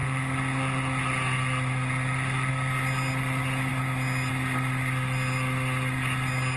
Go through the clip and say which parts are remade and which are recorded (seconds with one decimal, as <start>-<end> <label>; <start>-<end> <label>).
0.0-6.6 recorded